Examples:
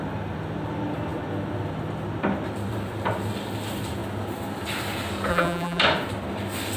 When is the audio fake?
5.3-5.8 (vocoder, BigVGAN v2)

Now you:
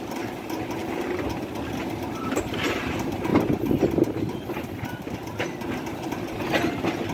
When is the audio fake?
0.0-0.8 (vocoder, BigVGAN v2); 2.2-3.3; 4.6-7.1

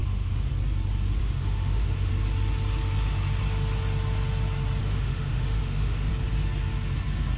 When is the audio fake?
0.0-0.5 (autoencoder, DAC-VAE); 1.2-2.1; 4.8-6.1

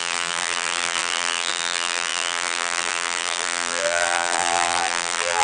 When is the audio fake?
0.0-5.4 (vocoder, BigVGAN v2)

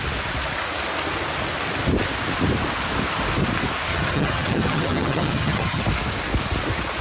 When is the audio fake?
3.9-5.8 (vocoder, HiFi-GAN)

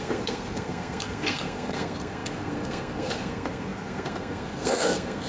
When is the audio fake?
0.0-5.3 (codec, SNAC)

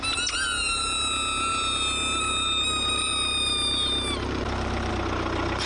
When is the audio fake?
1.5-4.9 (vocoder, BigVGAN v2)